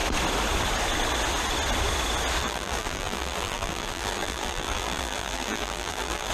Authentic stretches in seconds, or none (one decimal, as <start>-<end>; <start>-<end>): 0.0-2.4